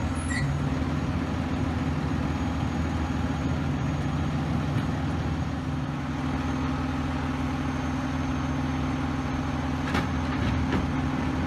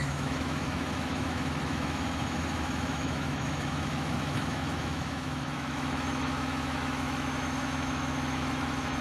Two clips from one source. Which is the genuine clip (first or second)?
first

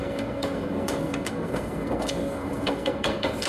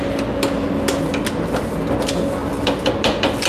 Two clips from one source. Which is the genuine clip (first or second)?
second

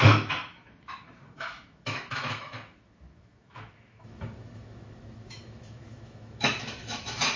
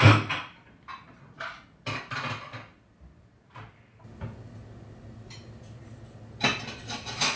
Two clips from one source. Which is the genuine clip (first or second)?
second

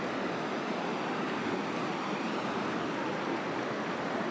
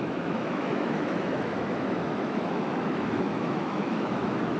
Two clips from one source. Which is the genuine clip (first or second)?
first